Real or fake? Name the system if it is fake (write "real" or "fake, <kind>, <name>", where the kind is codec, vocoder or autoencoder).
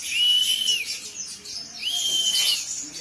real